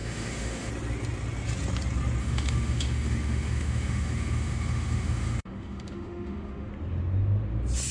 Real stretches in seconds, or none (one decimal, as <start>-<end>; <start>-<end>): 0.7-2.2; 6.7-7.9